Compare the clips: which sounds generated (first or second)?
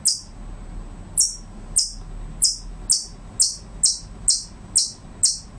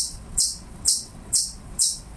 second